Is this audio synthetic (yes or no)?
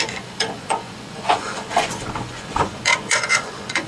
yes